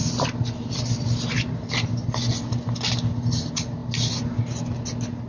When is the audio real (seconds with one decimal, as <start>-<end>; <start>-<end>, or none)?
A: 1.7-5.3